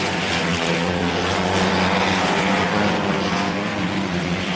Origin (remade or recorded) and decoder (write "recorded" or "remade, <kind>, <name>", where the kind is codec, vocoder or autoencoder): remade, vocoder, Vocos